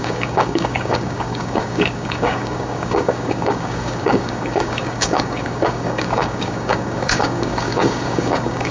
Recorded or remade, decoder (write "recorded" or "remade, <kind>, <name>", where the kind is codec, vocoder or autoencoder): remade, codec, DAC